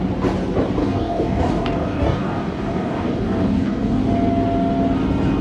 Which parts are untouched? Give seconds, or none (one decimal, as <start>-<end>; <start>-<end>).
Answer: 0.0-0.8; 4.0-5.4